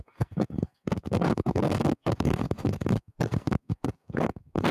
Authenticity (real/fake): fake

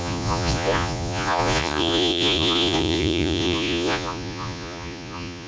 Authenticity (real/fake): fake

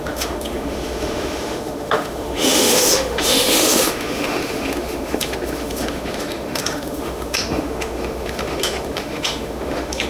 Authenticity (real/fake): fake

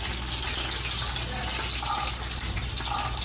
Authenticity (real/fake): real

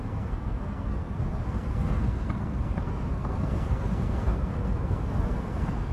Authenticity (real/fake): fake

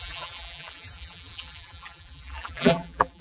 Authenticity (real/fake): fake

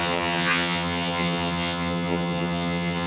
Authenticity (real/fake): fake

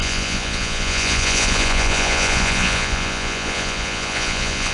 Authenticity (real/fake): fake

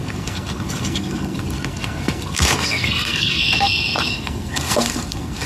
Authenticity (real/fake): fake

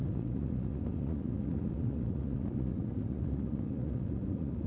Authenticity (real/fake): fake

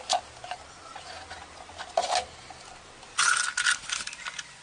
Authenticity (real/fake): real